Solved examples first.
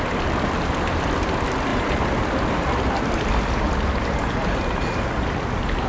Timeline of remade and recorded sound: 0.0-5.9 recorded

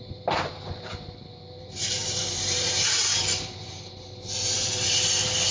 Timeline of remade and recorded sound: 0.0-5.5 remade

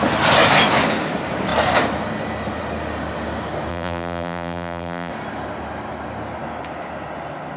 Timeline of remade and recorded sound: 0.0-3.7 recorded; 3.7-5.1 remade; 5.1-7.6 recorded

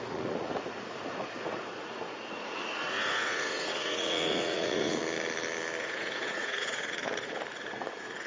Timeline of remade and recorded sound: 0.0-5.0 remade; 5.0-5.8 recorded; 5.8-8.3 remade

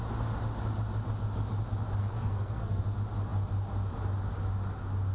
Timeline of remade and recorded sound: 0.0-2.0 recorded; 2.0-2.8 remade; 2.8-5.1 recorded